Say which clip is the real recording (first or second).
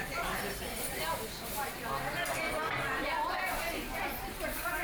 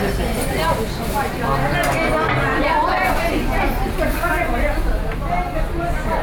second